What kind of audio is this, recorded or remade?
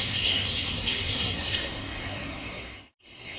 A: remade